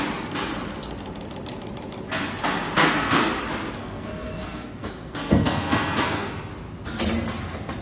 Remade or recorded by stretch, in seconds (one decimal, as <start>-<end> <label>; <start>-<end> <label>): 0.0-2.8 recorded; 2.8-3.3 remade; 3.3-3.8 recorded; 3.8-6.5 remade; 6.5-7.8 recorded